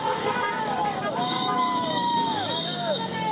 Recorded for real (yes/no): no